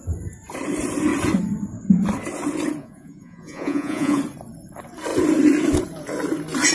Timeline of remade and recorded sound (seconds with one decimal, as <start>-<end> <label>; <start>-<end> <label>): 0.0-2.8 recorded; 2.8-4.2 remade; 4.2-6.7 recorded